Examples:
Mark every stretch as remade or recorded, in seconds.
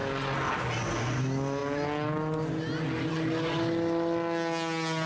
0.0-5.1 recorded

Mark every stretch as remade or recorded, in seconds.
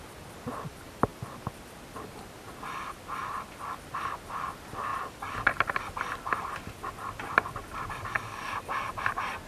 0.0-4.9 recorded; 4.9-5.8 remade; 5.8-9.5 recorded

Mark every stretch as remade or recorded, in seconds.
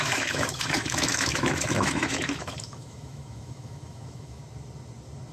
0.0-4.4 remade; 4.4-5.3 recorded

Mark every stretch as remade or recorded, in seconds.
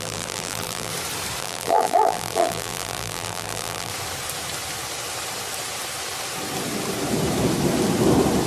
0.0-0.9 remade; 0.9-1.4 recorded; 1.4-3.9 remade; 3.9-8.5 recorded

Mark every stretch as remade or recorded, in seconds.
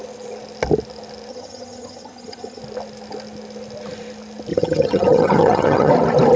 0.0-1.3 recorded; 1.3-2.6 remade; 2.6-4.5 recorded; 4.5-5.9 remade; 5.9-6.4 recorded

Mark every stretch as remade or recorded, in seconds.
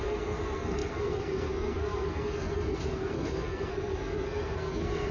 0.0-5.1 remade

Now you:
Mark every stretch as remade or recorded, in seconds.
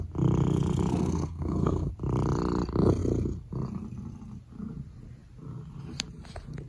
0.0-0.9 recorded; 0.9-1.9 remade; 1.9-6.7 recorded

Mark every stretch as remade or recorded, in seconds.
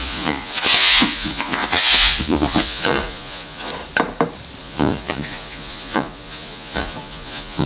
0.0-3.7 remade; 3.7-4.6 recorded; 4.6-7.7 remade